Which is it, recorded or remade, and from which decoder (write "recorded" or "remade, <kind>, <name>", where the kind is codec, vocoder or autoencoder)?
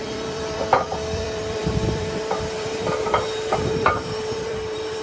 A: remade, vocoder, BigVGAN v2